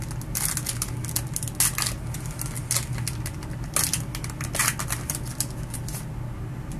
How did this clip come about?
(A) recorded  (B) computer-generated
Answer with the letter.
A